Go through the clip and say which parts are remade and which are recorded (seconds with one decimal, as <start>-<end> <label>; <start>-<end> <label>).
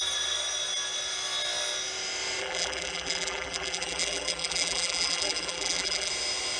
0.0-2.4 recorded; 2.4-6.1 remade; 6.1-6.6 recorded